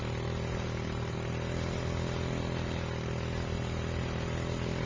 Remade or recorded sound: recorded